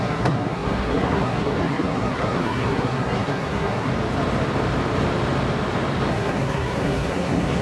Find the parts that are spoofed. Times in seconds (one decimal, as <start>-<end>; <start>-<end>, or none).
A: 0.0-3.9; 6.1-7.6